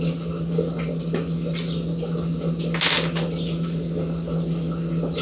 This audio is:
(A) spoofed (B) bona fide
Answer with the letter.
B